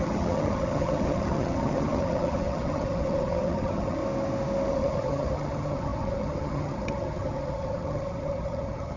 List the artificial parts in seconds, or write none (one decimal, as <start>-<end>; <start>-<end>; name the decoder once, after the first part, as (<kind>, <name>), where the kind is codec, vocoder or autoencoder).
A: 0.0-4.0 (vocoder, HiFi-GAN); 4.7-9.0